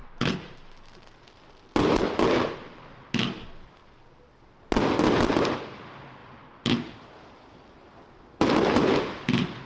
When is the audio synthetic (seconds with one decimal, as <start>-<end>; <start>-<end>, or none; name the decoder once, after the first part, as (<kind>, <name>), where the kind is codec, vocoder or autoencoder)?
none